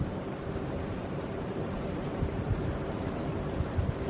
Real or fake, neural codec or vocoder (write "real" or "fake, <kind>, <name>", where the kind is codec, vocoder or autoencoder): fake, vocoder, BigVGAN v2